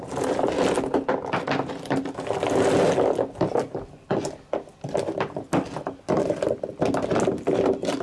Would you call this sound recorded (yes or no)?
yes